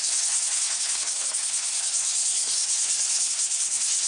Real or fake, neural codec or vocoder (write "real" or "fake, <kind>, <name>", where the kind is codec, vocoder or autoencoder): fake, codec, SNAC